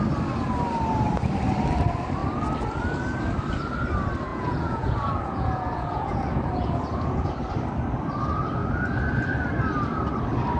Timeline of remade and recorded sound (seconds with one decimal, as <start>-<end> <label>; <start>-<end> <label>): 0.0-4.3 recorded; 4.3-7.3 remade; 7.3-10.6 recorded